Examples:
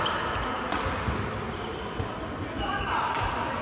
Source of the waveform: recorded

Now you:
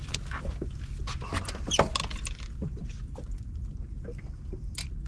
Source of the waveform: recorded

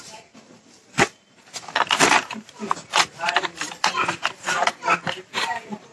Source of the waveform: remade